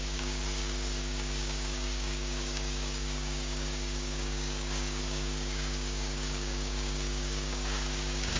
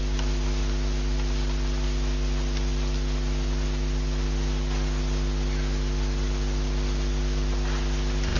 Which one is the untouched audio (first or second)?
second